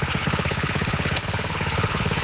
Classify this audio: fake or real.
fake